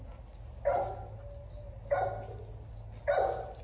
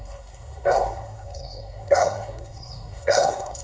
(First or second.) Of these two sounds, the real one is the first